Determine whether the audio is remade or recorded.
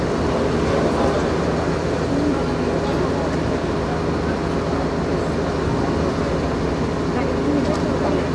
recorded